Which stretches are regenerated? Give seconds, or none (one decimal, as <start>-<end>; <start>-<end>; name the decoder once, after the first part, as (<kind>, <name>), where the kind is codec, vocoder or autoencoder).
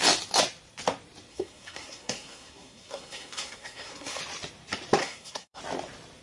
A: 1.3-4.2 (codec, SNAC); 5.0-5.6